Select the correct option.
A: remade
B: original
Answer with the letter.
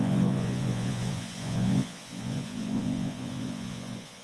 A